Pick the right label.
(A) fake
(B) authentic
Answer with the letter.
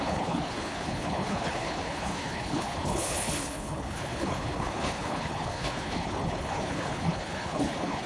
A